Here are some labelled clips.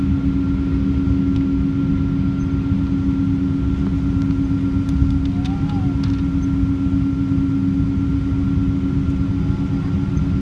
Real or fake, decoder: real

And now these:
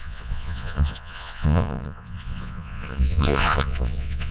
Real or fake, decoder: fake, vocoder, Vocos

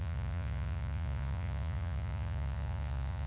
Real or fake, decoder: fake, vocoder, Vocos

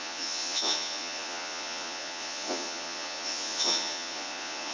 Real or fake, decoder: fake, vocoder, Vocos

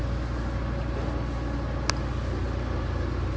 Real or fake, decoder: real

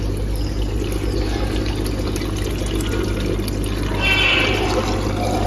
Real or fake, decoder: real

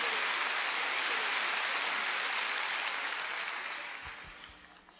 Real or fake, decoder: real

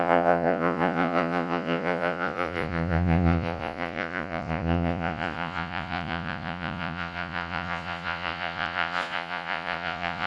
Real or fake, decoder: fake, vocoder, Vocos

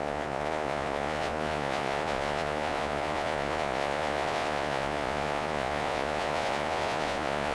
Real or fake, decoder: fake, vocoder, Vocos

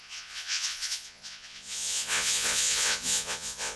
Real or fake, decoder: fake, vocoder, Vocos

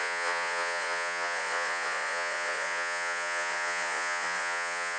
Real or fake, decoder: fake, vocoder, Vocos